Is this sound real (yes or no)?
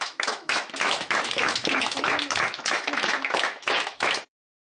no